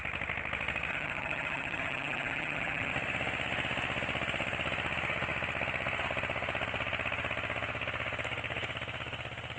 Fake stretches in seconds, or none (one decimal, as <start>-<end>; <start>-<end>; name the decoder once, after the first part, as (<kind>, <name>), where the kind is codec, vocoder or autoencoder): 0.9-2.9 (vocoder, HiFi-GAN)